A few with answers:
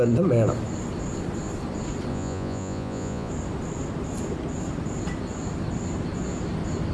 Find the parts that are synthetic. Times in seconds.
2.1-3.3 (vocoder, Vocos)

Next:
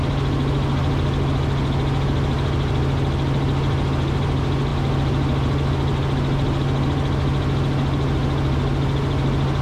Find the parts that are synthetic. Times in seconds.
none

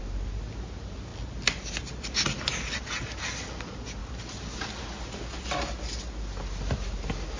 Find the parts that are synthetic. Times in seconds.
4.0-4.8 (vocoder, BigVGAN v2)